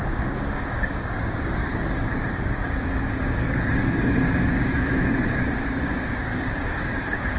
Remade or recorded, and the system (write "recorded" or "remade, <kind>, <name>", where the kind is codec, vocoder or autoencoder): remade, codec, DAC